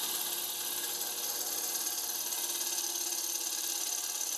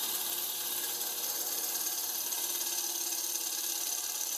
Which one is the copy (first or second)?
second